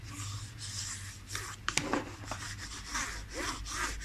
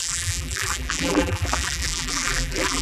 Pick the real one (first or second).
first